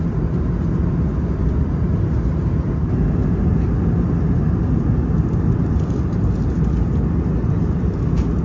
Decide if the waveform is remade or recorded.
recorded